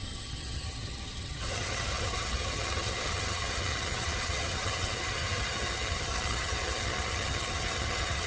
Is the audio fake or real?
fake